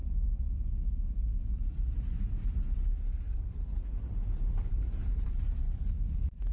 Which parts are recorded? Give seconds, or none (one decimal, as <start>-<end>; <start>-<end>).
0.0-5.0; 5.6-6.5